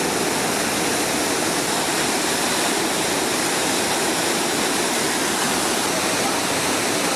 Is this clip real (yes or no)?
no